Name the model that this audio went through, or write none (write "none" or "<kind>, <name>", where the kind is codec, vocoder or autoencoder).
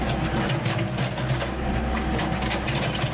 none